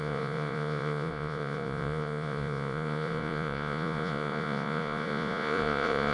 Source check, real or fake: fake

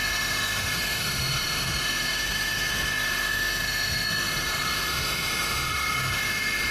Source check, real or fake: fake